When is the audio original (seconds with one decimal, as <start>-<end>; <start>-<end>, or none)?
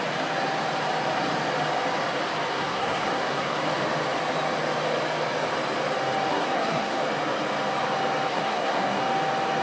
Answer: 0.0-2.5; 3.6-6.3; 7.0-8.3; 9.0-9.6